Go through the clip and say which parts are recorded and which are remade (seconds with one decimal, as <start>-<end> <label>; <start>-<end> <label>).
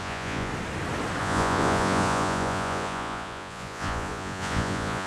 0.0-0.5 remade; 0.5-1.2 recorded; 1.2-5.1 remade